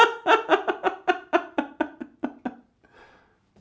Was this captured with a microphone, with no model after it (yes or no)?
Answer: yes